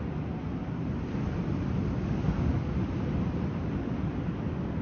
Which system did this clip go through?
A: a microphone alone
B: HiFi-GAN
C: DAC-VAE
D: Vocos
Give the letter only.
A